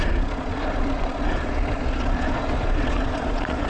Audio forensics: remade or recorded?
remade